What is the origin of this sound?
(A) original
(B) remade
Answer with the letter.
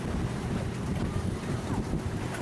A